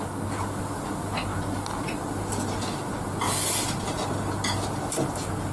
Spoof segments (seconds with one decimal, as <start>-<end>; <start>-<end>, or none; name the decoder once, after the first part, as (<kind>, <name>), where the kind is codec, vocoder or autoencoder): none